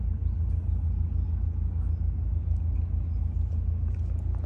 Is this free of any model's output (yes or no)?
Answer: yes